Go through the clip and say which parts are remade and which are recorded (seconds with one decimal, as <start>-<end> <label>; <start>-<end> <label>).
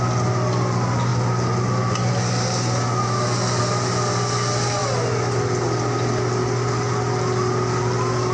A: 0.0-8.3 recorded